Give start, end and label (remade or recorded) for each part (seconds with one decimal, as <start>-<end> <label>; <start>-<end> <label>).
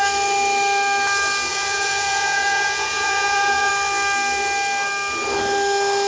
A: 0.0-1.5 recorded; 1.5-3.7 remade; 3.7-6.1 recorded